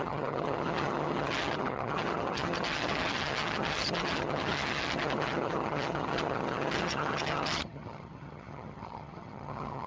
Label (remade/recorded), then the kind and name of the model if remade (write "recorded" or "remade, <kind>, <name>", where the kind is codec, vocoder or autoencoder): remade, vocoder, HiFi-GAN